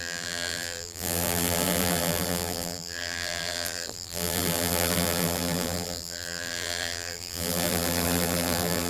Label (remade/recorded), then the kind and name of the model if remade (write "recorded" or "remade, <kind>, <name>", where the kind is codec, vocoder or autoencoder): remade, vocoder, BigVGAN v2